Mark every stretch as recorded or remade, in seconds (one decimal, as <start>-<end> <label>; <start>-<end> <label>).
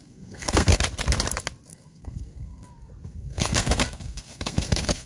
0.0-0.8 remade; 0.8-1.7 recorded; 1.7-5.1 remade